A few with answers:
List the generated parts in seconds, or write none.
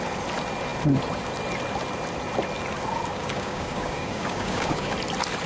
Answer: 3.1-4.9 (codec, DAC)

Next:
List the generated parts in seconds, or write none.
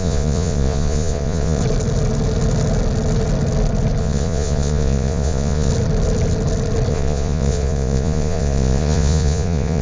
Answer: 0.0-1.6 (vocoder, Vocos); 4.0-5.7; 6.9-9.8